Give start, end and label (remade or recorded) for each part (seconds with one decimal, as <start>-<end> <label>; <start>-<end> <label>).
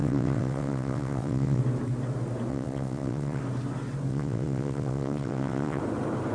0.0-1.6 remade; 1.6-2.5 recorded; 2.5-3.4 remade; 3.4-4.1 recorded; 4.1-5.8 remade; 5.8-6.3 recorded